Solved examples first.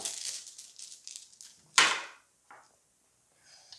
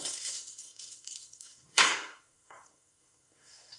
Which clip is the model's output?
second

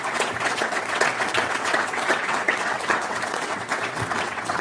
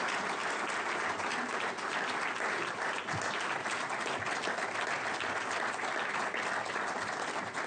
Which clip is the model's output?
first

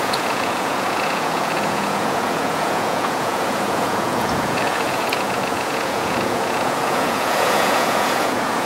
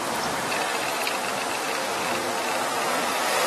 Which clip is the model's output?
first